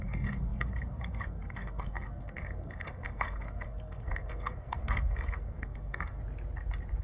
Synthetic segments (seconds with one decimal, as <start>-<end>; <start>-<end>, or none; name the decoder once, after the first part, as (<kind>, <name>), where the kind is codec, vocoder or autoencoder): 0.0-6.2 (codec, SNAC)